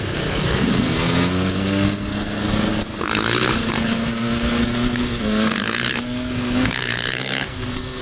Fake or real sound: fake